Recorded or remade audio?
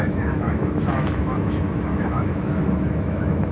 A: remade